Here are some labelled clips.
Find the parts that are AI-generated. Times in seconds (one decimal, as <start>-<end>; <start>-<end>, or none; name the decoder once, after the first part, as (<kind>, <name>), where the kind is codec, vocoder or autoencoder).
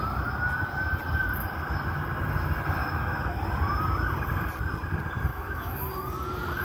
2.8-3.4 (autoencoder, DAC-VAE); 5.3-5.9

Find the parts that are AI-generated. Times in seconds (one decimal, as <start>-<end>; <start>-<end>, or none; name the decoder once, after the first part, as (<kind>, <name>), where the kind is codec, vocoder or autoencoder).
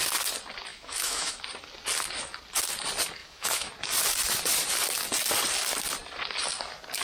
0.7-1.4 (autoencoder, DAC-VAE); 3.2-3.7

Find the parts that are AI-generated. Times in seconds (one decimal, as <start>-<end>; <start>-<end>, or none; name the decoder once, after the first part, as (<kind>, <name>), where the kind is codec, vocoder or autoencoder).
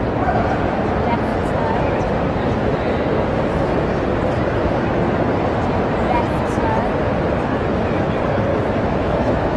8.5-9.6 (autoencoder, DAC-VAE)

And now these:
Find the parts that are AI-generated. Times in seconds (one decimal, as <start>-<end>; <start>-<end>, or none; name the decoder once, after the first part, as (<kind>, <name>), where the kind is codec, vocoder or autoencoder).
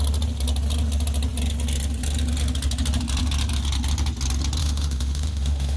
4.6-5.8 (autoencoder, DAC-VAE)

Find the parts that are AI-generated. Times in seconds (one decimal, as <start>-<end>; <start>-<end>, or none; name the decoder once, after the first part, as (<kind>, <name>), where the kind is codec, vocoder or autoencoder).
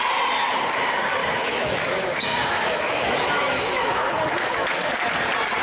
1.2-4.6 (autoencoder, DAC-VAE)